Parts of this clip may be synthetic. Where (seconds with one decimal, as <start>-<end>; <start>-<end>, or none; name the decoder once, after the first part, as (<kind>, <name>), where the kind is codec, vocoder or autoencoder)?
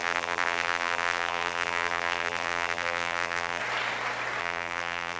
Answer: 0.0-3.6 (vocoder, BigVGAN v2); 4.4-5.2